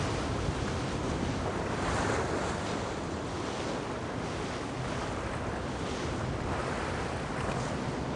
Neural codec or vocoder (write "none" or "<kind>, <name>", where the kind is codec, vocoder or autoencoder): none